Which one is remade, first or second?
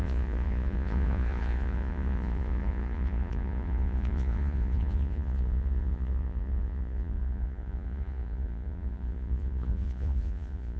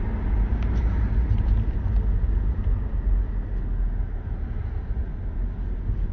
first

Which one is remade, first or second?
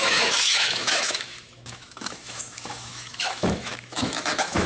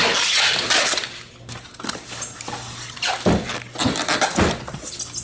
first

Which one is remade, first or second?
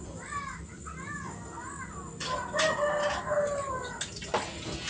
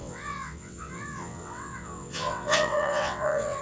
second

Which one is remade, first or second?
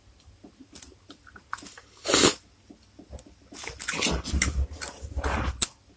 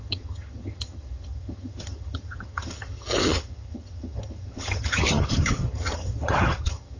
second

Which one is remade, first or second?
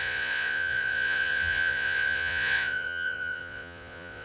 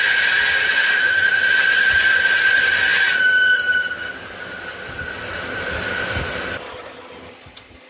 first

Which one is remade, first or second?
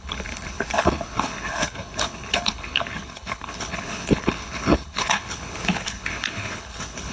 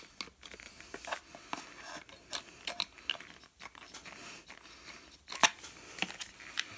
first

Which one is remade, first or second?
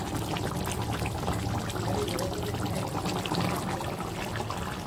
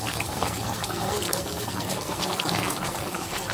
second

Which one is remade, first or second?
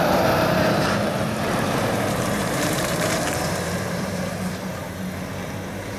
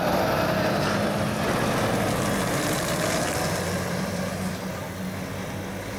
first